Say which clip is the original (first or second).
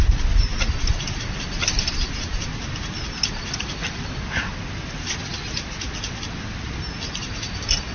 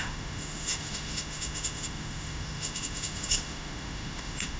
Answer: first